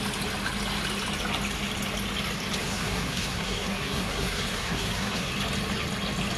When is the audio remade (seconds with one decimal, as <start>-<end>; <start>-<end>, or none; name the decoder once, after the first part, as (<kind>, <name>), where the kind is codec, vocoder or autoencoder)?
2.6-5.3 (codec, SNAC)